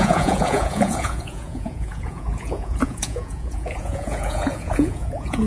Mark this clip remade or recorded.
remade